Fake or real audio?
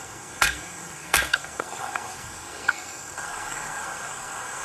fake